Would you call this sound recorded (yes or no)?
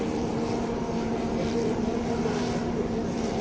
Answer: no